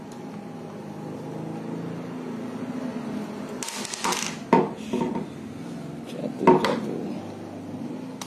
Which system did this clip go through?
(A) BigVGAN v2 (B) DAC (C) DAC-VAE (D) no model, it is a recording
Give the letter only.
D